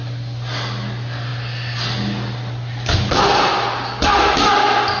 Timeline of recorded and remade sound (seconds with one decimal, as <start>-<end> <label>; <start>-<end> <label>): 0.0-5.0 recorded